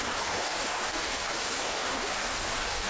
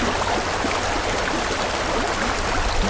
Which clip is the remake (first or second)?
first